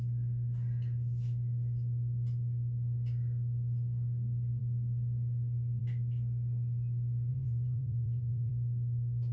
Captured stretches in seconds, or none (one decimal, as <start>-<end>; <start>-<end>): 0.0-7.3; 8.5-9.3